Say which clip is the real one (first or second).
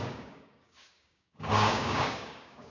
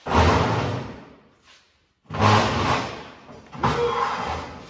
second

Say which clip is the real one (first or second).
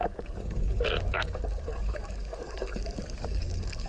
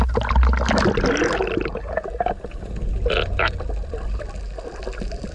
second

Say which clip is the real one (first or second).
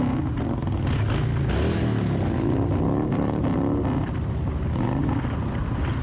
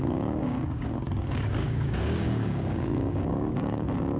first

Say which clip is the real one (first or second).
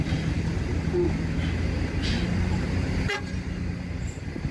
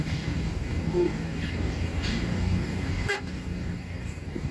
first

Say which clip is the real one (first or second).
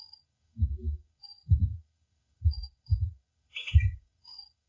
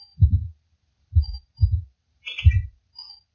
second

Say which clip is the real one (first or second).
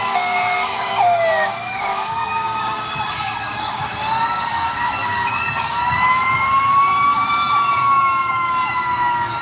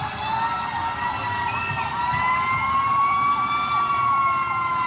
second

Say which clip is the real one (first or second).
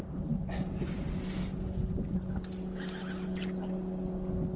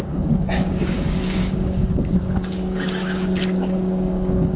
first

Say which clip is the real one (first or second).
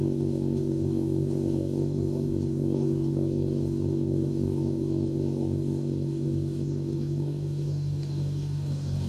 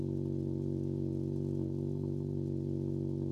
second